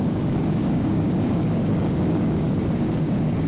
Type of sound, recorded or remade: remade